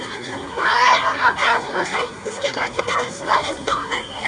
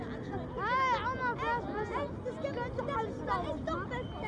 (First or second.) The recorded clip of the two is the second